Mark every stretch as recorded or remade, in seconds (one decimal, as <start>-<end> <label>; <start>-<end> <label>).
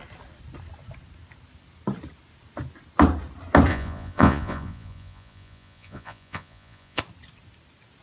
0.0-3.7 recorded; 3.7-7.0 remade; 7.0-8.0 recorded